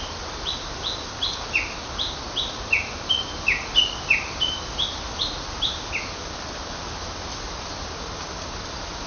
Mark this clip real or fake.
real